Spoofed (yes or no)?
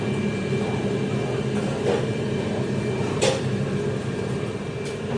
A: no